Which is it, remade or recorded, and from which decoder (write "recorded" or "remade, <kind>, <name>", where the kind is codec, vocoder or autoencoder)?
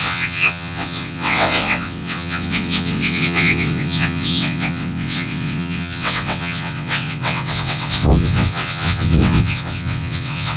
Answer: remade, vocoder, WaveNeXt